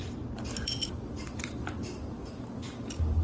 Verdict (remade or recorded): recorded